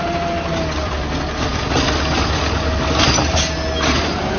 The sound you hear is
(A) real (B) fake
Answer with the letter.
A